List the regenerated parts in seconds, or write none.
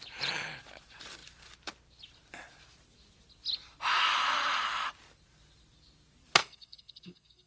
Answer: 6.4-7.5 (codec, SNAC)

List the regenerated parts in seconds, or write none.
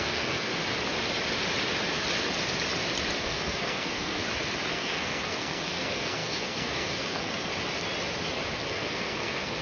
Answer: 0.0-0.5 (codec, SNAC); 3.2-4.2; 4.7-7.5; 8.7-9.6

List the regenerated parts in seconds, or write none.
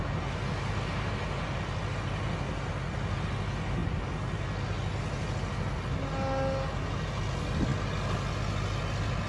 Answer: none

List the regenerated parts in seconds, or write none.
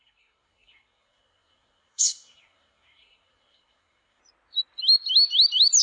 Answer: 0.0-4.2 (codec, SNAC)